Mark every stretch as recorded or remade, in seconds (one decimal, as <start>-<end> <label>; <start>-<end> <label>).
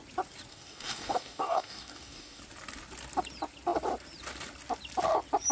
0.0-0.5 recorded; 0.5-2.4 remade; 2.4-5.5 recorded